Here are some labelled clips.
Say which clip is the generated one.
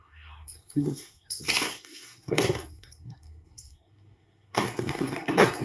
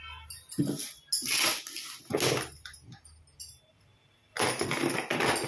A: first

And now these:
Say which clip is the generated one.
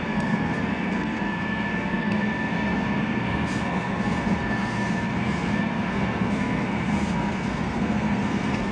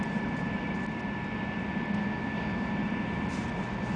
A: first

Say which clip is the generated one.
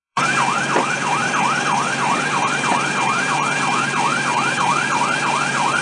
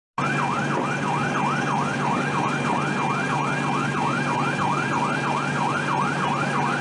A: first